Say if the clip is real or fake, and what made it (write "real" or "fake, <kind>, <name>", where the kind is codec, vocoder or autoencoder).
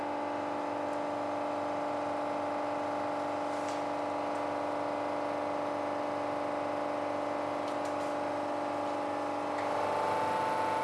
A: real